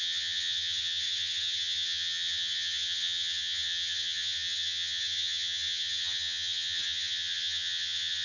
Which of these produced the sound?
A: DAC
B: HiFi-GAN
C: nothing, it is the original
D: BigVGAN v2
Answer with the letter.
B